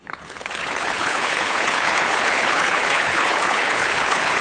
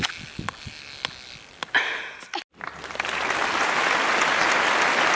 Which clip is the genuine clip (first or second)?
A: second